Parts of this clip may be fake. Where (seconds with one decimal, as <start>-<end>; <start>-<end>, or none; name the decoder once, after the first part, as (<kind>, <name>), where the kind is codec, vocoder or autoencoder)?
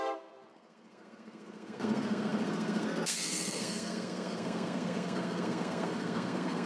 0.0-6.7 (codec, SNAC)